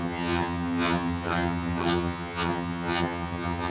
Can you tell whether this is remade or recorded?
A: remade